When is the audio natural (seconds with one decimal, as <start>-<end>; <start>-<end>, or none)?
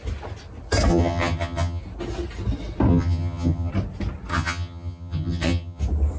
0.0-0.9; 1.8-2.9; 3.7-4.3; 5.8-6.2